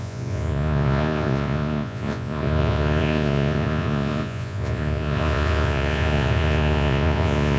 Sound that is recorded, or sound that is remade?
remade